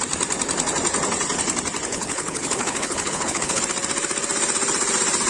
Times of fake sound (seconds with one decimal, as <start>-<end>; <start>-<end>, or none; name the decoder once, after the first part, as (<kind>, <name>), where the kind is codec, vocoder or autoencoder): 1.9-3.6 (codec, HILCodec)